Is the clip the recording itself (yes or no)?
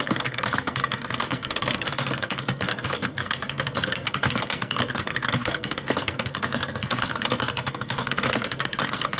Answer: no